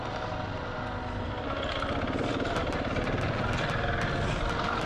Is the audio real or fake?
real